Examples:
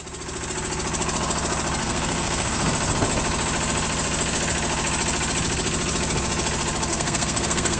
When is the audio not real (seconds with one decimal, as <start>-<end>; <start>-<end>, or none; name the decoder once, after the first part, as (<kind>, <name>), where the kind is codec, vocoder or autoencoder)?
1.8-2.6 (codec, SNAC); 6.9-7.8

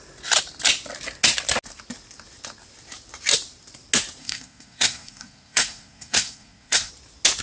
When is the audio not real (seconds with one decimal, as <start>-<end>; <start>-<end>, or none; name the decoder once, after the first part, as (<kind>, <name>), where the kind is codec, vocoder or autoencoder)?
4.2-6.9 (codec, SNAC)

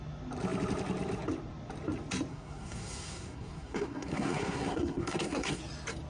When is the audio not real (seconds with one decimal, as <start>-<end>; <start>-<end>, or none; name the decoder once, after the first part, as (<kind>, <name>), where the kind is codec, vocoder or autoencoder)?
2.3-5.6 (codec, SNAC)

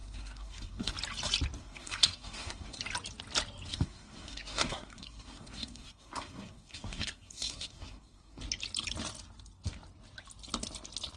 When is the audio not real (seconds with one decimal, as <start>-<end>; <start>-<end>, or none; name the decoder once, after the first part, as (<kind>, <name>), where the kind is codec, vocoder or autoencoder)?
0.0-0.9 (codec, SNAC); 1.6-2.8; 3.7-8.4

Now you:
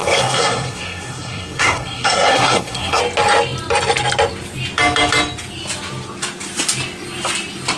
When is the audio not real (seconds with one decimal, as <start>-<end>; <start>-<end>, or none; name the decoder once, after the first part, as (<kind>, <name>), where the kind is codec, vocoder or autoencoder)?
0.0-3.0 (codec, SNAC)

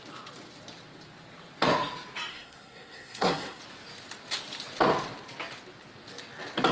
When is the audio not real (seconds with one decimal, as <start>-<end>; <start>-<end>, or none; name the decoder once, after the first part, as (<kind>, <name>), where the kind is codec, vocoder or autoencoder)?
2.3-3.6 (codec, SNAC)